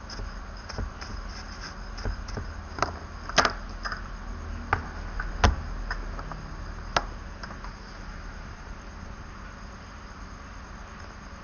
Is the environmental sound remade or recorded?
recorded